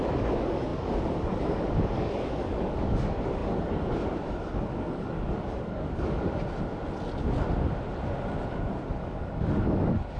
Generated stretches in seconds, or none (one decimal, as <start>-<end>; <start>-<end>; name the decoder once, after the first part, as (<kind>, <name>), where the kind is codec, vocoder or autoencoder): 0.0-6.3 (codec, DAC); 8.5-10.2